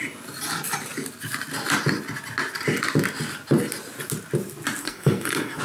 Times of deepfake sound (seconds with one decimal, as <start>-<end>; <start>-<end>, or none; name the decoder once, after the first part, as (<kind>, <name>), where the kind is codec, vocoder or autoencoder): 4.8-5.6 (codec, SNAC)